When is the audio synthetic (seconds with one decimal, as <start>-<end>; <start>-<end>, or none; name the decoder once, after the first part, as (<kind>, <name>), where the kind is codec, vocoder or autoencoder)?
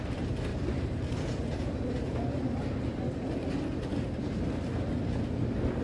0.5-3.1 (vocoder, BigVGAN v2); 3.9-4.9